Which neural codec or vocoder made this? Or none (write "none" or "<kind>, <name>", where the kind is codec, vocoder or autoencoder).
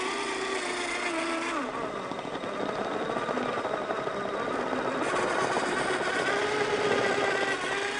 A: none